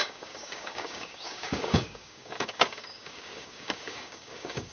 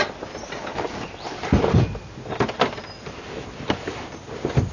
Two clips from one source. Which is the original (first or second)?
second